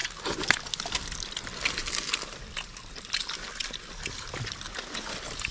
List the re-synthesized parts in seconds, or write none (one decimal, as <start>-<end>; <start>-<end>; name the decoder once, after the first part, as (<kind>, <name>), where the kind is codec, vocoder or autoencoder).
none